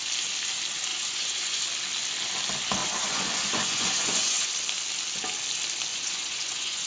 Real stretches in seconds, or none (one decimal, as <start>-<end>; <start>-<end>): 0.0-0.9; 1.6-2.8; 4.5-5.9